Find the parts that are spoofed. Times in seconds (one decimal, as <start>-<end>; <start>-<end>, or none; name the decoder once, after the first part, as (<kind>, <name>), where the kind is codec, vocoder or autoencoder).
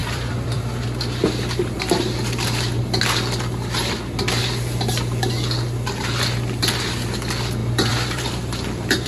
0.0-0.6 (vocoder, BigVGAN v2); 7.6-9.1